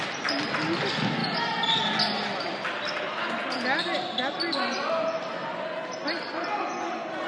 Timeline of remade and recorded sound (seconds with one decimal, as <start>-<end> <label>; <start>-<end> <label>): 0.0-7.3 recorded